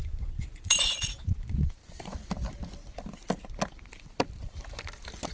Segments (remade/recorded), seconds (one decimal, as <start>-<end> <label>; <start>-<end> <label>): 0.0-1.8 remade; 1.8-5.3 recorded